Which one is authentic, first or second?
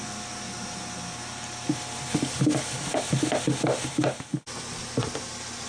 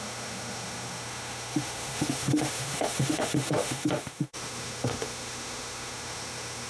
first